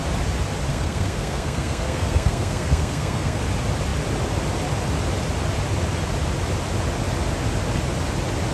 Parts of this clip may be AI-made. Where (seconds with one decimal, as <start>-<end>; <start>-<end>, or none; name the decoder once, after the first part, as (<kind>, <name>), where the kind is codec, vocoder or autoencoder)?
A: 0.7-3.4 (codec, SNAC)